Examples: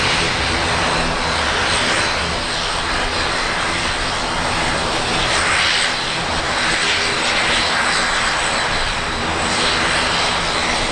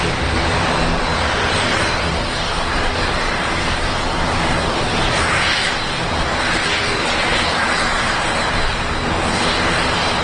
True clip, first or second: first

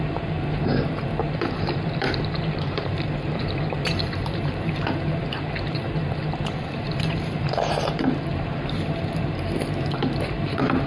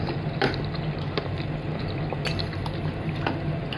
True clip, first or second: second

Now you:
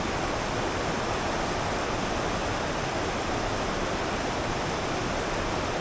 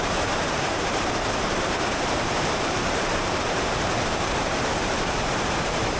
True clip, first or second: first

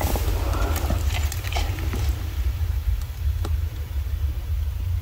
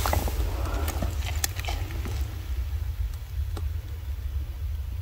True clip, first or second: second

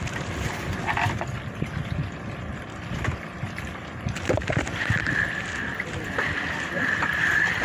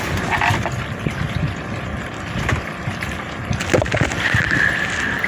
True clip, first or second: second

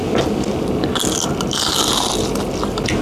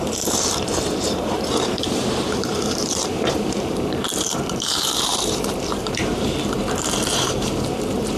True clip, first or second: first